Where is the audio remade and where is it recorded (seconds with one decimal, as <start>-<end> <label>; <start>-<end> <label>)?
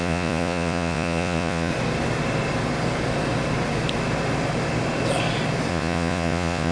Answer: 0.0-1.7 remade; 1.7-5.7 recorded; 5.7-6.7 remade